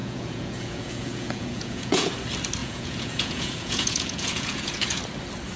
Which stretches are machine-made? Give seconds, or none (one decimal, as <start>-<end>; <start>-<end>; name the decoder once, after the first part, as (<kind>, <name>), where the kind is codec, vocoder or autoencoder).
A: 0.0-2.1 (vocoder, Vocos); 2.6-5.0